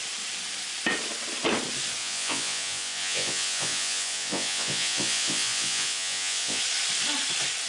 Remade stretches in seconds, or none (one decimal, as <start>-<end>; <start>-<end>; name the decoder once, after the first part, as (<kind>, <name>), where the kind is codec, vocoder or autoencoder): 2.0-6.6 (vocoder, Vocos)